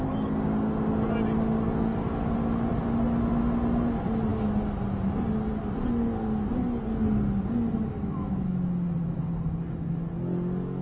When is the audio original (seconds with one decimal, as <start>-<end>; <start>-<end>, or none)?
0.0-10.8